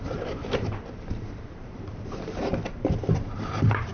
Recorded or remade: remade